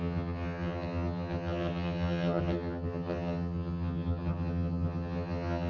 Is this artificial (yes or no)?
yes